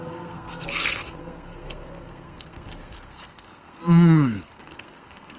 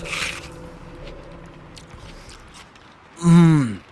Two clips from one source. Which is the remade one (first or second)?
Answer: first